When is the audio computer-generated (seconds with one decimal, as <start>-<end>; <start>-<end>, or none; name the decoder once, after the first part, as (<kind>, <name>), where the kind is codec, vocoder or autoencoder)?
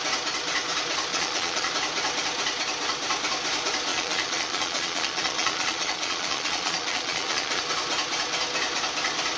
1.1-1.7 (vocoder, Vocos); 3.9-7.6